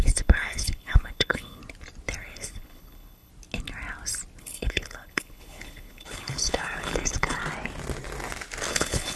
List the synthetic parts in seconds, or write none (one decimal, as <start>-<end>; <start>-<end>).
0.0-1.6; 2.2-3.3; 4.4-7.4; 8.7-9.2